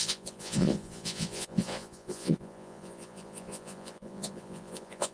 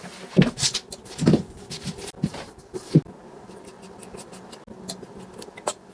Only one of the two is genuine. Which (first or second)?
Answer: second